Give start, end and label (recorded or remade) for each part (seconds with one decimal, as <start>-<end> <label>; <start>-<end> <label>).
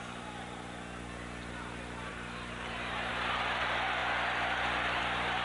0.0-2.1 recorded; 2.1-3.1 remade; 3.1-5.4 recorded